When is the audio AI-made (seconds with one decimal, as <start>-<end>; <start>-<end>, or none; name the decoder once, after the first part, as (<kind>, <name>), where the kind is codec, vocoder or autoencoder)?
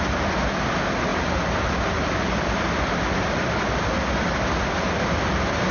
none